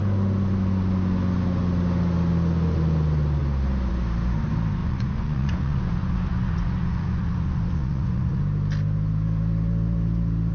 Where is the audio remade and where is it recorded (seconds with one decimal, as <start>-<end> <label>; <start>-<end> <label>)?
0.0-4.8 recorded; 4.8-8.4 remade; 8.4-10.5 recorded